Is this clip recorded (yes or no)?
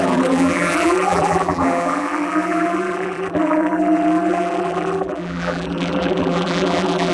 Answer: no